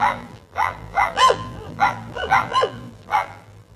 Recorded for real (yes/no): no